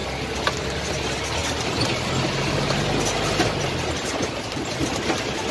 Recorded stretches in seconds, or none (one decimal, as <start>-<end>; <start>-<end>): 0.0-5.5